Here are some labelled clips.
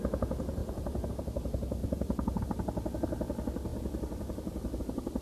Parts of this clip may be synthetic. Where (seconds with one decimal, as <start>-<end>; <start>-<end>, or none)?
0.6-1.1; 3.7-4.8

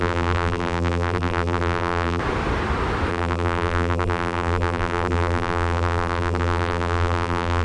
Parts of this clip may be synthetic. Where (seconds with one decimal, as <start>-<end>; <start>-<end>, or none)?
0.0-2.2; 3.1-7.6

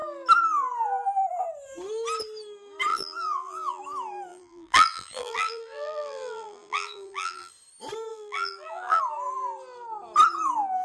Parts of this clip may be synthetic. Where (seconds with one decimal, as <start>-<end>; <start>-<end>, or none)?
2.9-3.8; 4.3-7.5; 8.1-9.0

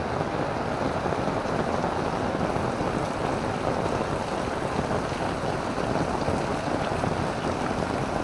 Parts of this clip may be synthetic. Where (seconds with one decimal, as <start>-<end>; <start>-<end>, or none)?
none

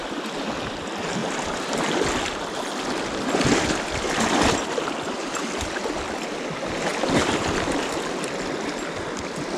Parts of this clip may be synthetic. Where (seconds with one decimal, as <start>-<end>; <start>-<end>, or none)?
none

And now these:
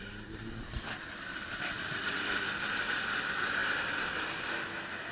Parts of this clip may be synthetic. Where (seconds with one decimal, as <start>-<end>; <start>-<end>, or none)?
0.0-5.1

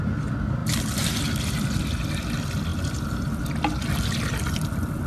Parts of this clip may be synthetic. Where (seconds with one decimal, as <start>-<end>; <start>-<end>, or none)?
0.6-1.4; 2.7-3.4

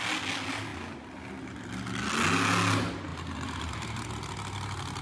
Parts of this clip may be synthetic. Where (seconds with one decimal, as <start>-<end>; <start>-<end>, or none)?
3.1-4.1